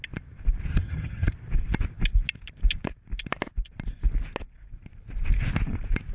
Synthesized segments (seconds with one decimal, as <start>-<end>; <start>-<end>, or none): 0.7-1.3